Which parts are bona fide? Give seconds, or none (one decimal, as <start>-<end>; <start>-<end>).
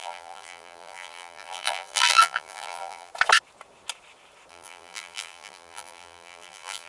3.1-4.5